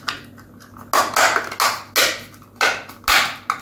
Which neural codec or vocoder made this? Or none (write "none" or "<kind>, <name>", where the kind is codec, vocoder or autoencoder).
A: none